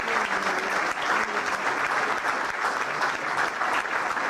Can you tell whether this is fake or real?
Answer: real